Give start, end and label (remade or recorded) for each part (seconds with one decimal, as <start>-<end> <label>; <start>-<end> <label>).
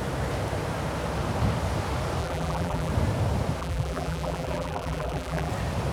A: 0.0-2.2 recorded; 2.2-2.9 remade; 2.9-3.6 recorded; 3.6-5.5 remade; 5.5-5.9 recorded